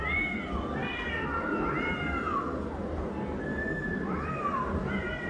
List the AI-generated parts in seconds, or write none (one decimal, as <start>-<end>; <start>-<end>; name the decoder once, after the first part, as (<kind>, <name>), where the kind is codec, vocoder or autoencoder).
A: none